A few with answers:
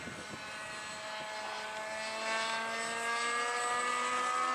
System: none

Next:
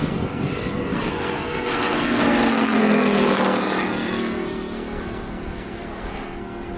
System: codec, SNAC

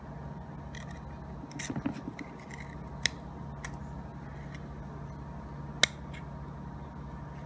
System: none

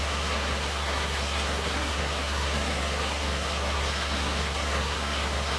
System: codec, SNAC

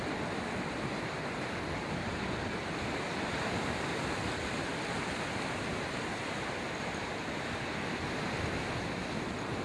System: none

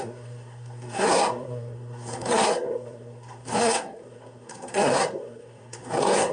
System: codec, SNAC